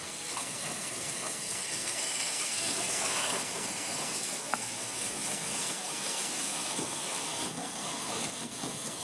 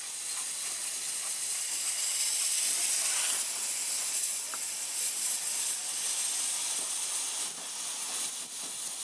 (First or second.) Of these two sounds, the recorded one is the second